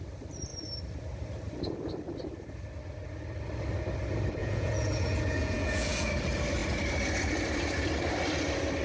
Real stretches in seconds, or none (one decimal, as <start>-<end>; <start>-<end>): 0.0-4.4; 6.1-8.8